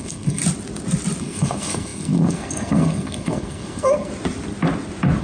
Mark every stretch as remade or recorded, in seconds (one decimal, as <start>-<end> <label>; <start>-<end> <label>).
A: 0.0-0.4 remade; 0.4-1.2 recorded; 1.2-4.1 remade; 4.1-5.2 recorded